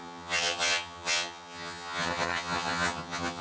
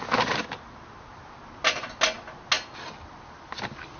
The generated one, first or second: first